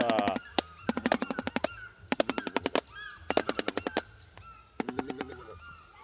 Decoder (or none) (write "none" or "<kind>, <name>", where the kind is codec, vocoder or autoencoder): none